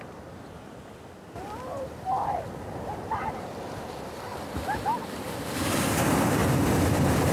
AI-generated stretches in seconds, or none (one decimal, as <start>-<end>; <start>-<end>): 6.4-7.3